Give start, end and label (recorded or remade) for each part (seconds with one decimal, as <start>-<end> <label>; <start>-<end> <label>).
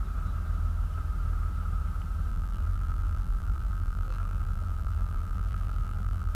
0.0-2.3 recorded; 2.3-6.3 remade